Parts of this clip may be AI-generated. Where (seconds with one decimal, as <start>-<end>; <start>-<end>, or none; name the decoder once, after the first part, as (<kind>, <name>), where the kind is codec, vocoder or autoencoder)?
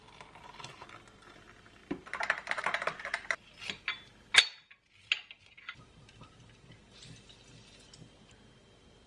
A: none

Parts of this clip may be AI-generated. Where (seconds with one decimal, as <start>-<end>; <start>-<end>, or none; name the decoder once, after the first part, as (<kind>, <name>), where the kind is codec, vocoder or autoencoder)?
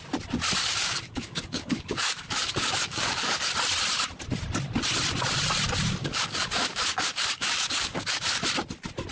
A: 0.6-3.5 (codec, DAC); 6.0-8.4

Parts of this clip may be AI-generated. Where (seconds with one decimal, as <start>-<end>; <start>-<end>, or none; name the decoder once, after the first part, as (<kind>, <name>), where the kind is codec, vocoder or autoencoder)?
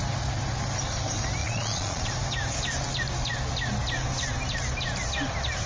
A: 1.4-2.1 (vocoder, Vocos)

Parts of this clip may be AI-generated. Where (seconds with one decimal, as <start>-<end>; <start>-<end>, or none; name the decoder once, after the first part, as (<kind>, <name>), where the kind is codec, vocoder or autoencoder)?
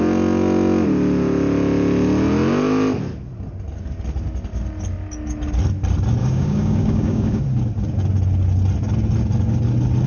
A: 6.2-7.4 (codec, DAC)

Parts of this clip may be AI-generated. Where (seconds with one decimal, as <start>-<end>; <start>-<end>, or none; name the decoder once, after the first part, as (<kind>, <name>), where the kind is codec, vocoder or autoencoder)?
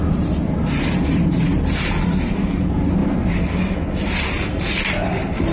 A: 0.0-1.5 (vocoder, BigVGAN v2); 2.0-3.0; 5.1-5.5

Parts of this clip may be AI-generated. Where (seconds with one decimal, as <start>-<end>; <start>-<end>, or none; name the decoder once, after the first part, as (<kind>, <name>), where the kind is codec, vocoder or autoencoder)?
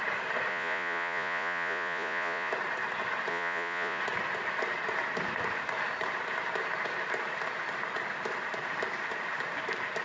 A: 0.5-2.5 (vocoder, Vocos); 3.3-4.0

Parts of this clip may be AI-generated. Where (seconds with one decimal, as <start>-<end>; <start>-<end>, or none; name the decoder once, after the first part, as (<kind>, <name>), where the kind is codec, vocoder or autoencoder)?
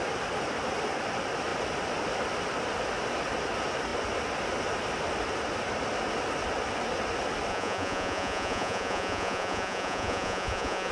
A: 7.5-10.9 (vocoder, Vocos)